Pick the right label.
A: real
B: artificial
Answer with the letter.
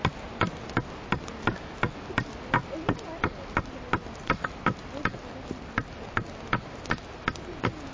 A